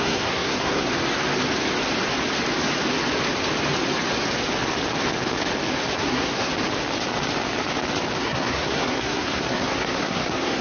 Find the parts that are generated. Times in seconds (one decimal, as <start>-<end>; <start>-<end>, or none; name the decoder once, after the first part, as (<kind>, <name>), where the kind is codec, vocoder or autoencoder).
0.0-0.9 (codec, SNAC); 6.0-6.5; 8.2-10.6